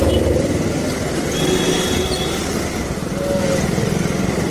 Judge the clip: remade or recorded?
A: recorded